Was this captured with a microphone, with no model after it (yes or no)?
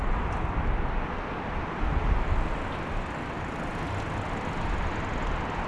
yes